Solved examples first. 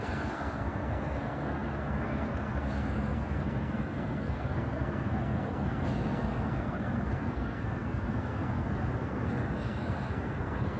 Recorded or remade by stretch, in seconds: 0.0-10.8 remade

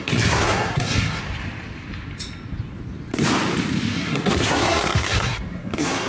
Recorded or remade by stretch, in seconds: 0.0-1.2 remade; 1.2-3.9 recorded; 3.9-6.1 remade

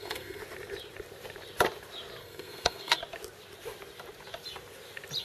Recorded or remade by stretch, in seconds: 0.0-0.4 remade; 0.4-2.2 recorded; 2.2-3.0 remade; 3.0-5.2 recorded

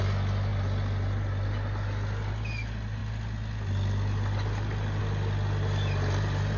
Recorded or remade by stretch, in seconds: 0.0-6.6 recorded

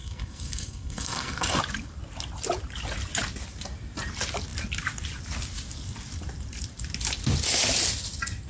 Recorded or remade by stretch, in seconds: 0.0-1.6 remade; 1.6-8.5 recorded

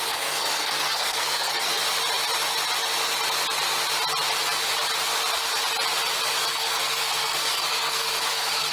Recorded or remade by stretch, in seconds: 0.0-1.8 remade; 1.8-6.5 recorded; 6.5-8.7 remade

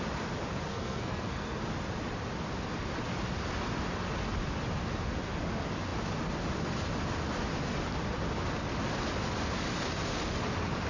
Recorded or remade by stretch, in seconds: 0.0-0.7 recorded; 0.7-1.6 remade; 1.6-10.9 recorded

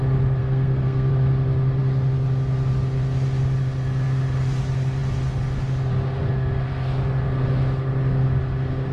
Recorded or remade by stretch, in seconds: 0.0-0.4 recorded; 0.4-1.1 remade; 1.1-8.9 recorded